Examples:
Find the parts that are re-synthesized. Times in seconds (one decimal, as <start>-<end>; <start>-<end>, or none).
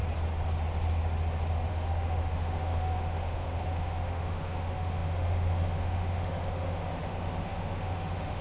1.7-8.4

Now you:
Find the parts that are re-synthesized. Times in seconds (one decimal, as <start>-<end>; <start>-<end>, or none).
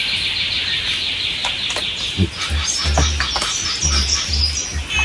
none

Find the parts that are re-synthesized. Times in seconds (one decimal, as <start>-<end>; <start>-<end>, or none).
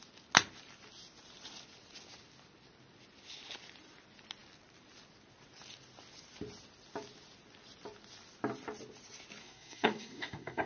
9.4-10.7